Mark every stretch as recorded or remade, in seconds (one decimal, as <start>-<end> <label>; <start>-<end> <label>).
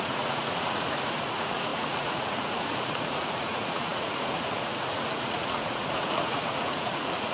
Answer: 0.0-7.3 remade